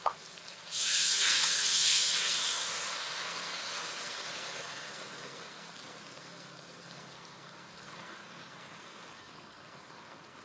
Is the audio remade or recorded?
remade